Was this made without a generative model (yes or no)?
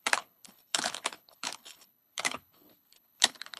no